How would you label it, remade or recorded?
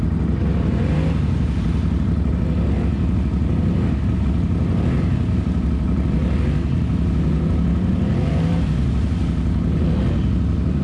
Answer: recorded